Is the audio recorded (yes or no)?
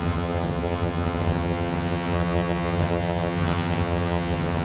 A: no